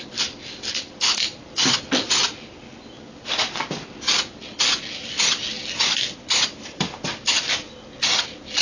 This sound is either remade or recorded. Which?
recorded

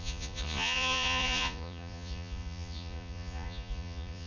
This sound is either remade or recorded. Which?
remade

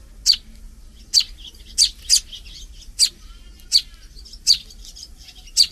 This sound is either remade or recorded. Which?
recorded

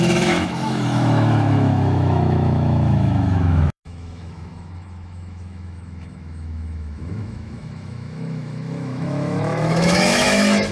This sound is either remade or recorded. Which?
remade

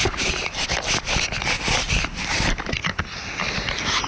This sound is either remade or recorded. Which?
recorded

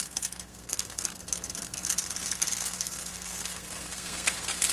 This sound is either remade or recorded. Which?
remade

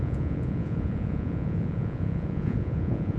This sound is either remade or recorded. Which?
remade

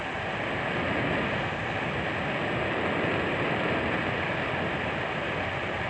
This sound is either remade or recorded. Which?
recorded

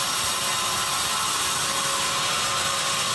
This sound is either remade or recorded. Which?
recorded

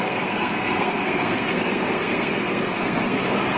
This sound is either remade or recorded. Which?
remade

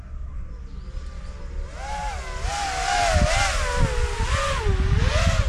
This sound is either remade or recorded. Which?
recorded